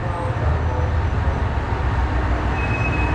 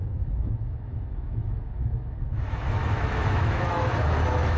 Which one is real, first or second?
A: first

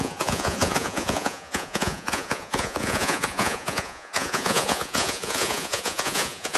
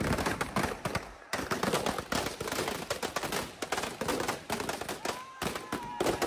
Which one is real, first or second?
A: second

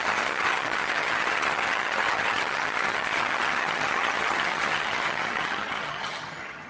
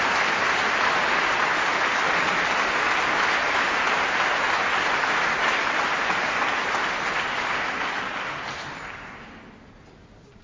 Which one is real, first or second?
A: second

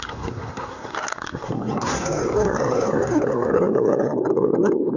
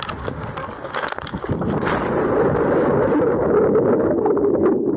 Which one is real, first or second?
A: second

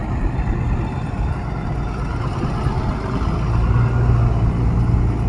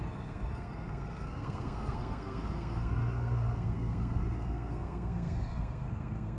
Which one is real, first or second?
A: first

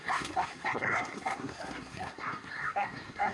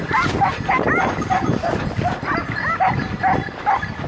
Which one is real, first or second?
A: second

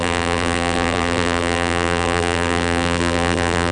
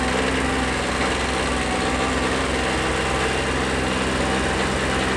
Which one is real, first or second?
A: second